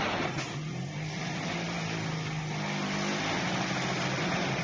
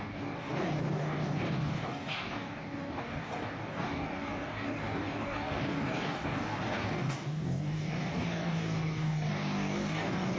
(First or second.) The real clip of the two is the first